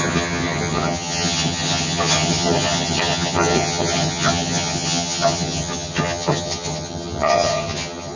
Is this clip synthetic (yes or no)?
yes